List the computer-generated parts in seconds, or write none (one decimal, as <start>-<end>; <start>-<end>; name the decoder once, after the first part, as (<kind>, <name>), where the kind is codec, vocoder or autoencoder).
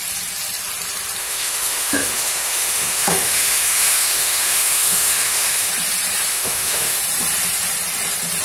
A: 1.2-5.7 (autoencoder, DAC-VAE); 6.3-7.0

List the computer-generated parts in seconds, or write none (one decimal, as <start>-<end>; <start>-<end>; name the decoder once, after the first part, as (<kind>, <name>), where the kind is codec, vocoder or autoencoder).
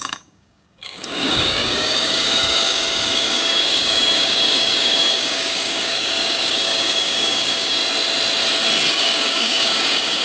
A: 0.0-7.8 (codec, DAC); 8.9-10.2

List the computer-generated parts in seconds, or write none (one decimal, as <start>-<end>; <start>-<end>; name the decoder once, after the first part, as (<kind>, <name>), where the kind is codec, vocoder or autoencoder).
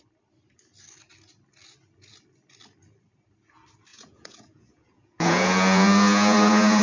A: 3.9-6.8 (vocoder, Vocos)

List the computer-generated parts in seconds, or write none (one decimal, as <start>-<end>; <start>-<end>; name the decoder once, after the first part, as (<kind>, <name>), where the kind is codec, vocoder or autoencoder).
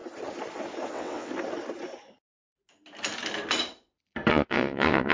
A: 0.9-1.3 (vocoder, WaveNeXt); 4.3-5.1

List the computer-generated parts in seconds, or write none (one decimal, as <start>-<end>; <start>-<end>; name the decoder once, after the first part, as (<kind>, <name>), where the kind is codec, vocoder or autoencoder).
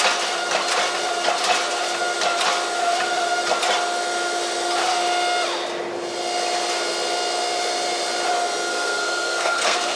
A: 8.7-10.0 (codec, SNAC)